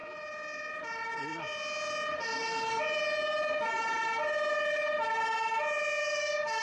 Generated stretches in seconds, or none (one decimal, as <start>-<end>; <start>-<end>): 6.0-6.6